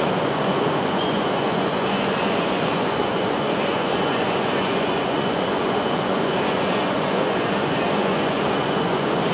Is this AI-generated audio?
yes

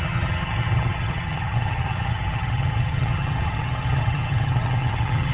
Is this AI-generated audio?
yes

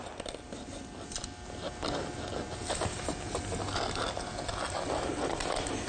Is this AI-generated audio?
no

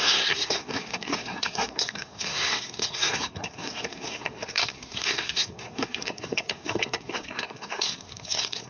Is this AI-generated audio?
yes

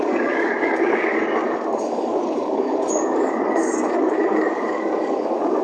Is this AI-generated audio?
yes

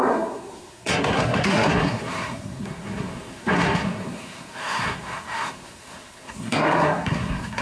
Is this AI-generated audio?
yes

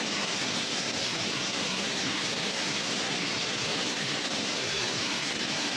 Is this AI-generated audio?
yes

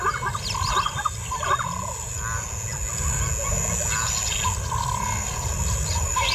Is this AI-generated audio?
no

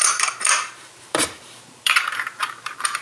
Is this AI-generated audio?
yes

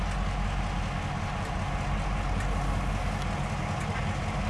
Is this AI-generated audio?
no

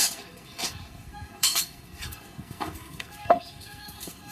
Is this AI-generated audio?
yes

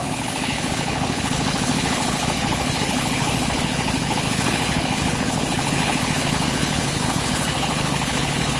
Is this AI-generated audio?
yes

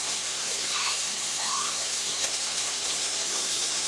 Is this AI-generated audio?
yes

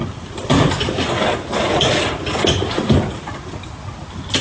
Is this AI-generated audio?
no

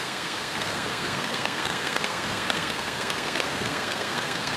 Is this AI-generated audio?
yes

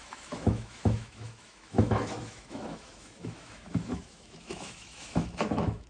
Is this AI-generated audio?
yes